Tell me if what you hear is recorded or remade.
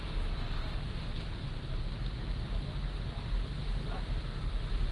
recorded